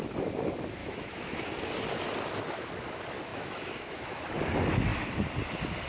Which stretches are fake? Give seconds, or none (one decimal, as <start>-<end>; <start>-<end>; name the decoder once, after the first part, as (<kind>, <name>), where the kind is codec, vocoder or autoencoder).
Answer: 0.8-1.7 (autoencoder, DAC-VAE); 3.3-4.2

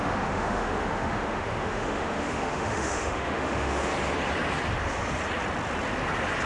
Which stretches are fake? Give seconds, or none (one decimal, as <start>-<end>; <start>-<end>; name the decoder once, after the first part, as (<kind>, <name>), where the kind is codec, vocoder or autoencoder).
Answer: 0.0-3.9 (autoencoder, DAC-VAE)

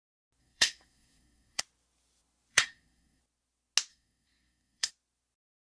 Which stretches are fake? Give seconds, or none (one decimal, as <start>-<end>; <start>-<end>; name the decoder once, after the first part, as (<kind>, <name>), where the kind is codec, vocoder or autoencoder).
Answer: 0.4-1.6 (codec, SNAC); 2.5-3.2; 3.9-4.9

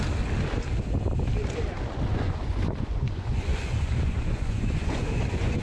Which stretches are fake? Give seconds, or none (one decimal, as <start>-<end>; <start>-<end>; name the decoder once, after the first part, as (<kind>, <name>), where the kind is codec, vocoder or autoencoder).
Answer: 2.1-5.6 (vocoder, Vocos)

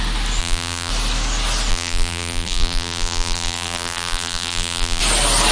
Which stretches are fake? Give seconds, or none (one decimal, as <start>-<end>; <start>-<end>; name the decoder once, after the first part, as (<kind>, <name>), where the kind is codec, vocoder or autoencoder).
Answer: 0.4-0.9 (vocoder, BigVGAN v2); 1.7-5.0